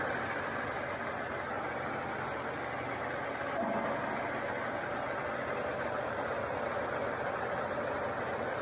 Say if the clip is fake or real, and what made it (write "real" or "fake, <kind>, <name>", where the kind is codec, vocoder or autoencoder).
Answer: real